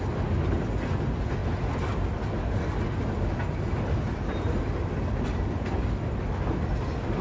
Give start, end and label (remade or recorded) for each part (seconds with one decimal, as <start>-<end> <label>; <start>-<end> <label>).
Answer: 0.0-7.2 recorded